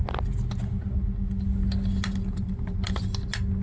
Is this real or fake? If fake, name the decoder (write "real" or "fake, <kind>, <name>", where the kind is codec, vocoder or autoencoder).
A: real